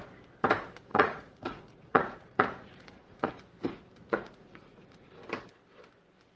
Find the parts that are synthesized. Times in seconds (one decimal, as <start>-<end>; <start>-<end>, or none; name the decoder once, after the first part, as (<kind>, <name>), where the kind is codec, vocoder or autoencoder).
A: 0.9-3.3 (vocoder, Vocos); 4.0-5.1